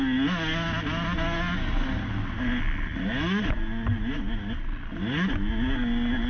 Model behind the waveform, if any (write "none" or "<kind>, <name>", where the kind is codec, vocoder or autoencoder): none